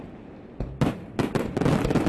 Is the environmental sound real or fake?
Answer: fake